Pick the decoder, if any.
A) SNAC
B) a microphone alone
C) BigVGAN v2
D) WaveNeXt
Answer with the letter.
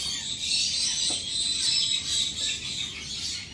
B